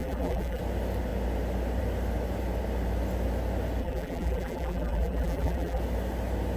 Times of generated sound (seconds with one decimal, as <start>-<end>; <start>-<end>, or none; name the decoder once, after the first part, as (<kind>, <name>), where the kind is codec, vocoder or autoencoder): 0.0-0.6 (vocoder, BigVGAN v2); 3.8-5.8